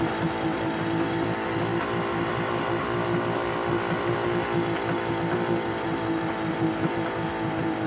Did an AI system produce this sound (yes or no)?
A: no